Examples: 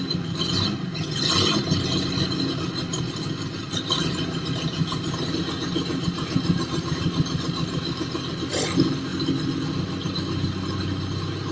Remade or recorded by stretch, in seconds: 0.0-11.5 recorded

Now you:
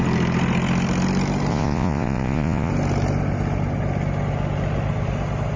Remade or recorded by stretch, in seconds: 0.0-1.5 recorded; 1.5-2.7 remade; 2.7-5.6 recorded

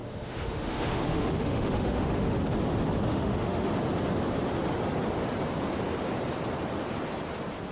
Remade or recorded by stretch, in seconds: 0.0-2.3 remade; 2.3-3.1 recorded; 3.1-3.7 remade; 3.7-7.7 recorded

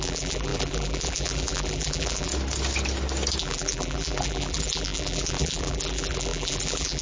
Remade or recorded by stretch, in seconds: 0.0-2.3 remade; 2.3-3.4 recorded; 3.4-7.0 remade

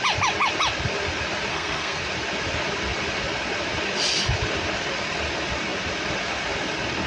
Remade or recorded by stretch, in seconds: 0.0-1.5 recorded; 1.5-2.0 remade; 2.0-7.1 recorded